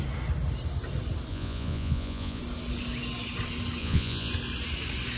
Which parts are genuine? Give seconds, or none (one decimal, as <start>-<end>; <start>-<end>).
0.0-1.3; 2.4-3.8; 4.3-5.2